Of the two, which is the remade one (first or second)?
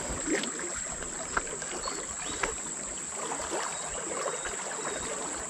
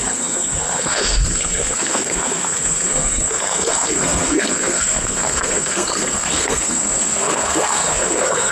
second